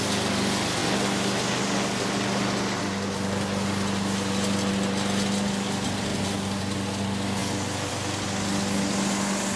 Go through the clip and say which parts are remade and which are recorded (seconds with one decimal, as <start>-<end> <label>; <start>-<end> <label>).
0.0-9.6 recorded